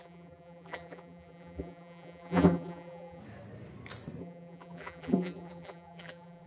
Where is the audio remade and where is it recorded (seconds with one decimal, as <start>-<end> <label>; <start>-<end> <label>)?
0.0-3.2 remade; 3.2-4.2 recorded; 4.2-6.5 remade